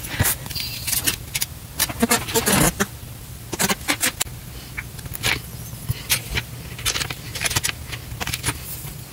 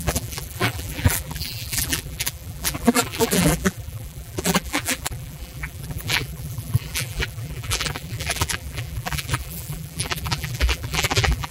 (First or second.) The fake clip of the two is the second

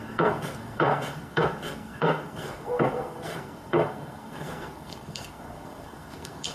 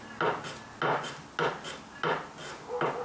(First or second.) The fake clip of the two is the first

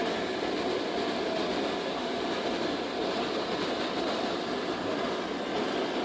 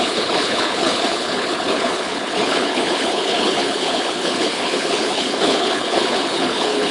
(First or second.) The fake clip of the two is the second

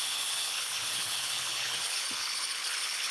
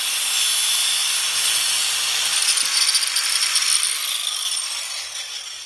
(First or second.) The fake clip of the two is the first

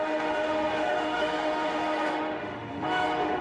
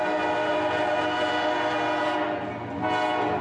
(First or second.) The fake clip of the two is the first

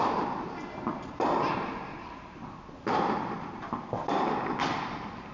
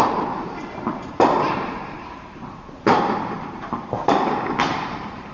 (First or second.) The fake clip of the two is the second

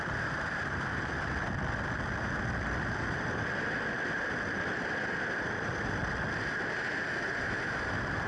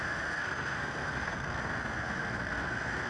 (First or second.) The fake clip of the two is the second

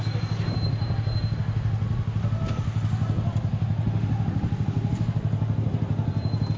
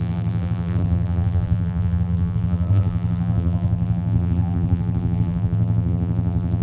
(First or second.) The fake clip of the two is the second